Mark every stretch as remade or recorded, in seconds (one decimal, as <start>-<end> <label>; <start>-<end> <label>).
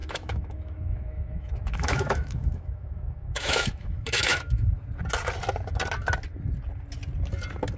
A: 0.0-4.7 remade; 4.7-7.8 recorded